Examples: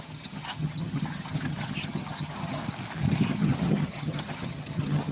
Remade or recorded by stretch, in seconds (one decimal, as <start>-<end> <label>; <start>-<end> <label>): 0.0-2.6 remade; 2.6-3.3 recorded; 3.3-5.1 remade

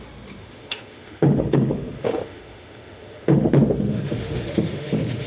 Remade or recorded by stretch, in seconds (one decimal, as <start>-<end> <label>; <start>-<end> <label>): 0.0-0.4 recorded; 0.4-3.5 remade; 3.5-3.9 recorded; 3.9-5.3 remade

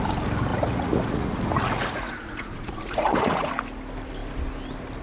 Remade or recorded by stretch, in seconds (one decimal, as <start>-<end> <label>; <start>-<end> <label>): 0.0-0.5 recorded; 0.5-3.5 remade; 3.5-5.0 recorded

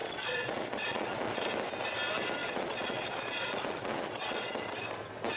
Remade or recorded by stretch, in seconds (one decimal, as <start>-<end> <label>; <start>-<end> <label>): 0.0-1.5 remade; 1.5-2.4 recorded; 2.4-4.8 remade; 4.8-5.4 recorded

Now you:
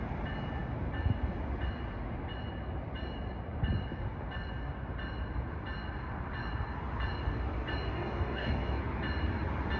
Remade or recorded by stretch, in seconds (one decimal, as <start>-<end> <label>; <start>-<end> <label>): 0.0-7.9 recorded; 7.9-8.8 remade; 8.8-9.8 recorded